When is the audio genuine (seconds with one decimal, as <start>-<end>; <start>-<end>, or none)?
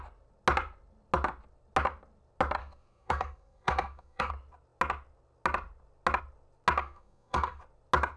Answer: 0.0-2.6; 4.3-6.8; 7.6-8.2